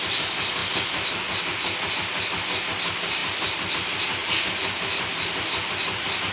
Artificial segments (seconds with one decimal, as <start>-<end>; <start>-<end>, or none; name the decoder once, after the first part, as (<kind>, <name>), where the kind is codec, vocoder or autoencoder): none